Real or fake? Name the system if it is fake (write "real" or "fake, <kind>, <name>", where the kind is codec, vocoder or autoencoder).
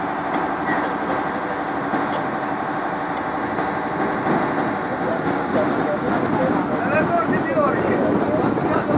real